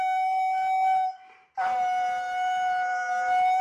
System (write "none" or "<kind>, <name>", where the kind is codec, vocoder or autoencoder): none